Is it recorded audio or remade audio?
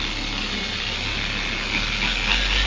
recorded